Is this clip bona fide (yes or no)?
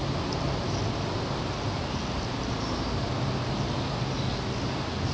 yes